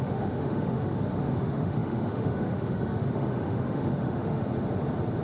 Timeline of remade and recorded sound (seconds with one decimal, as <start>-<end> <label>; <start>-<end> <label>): 0.0-4.4 remade; 4.4-5.2 recorded